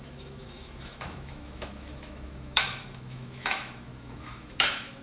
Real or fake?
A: fake